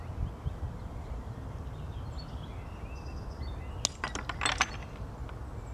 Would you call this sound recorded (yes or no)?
yes